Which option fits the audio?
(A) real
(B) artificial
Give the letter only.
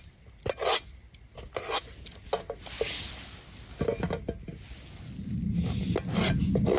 A